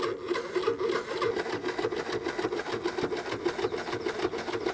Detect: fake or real real